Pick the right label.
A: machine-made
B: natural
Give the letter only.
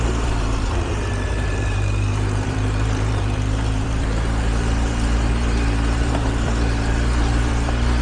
A